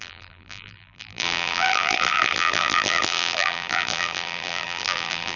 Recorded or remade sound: remade